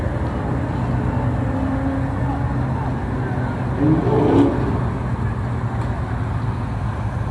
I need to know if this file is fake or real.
real